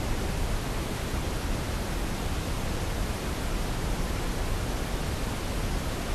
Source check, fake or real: real